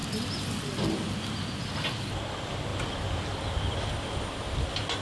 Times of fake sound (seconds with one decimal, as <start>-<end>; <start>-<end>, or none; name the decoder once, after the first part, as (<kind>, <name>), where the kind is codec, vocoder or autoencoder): none